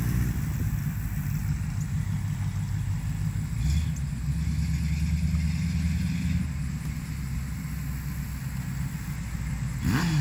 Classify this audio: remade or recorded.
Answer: recorded